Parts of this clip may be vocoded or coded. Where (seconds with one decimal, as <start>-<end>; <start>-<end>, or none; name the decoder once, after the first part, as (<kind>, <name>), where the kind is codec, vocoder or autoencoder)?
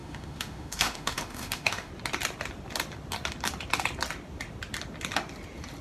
0.0-1.9 (autoencoder, DAC-VAE)